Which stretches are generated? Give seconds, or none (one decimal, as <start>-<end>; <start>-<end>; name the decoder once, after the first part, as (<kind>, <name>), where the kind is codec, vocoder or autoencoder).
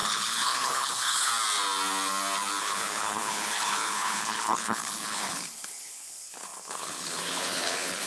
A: 0.0-1.3 (codec, HILCodec); 2.6-8.1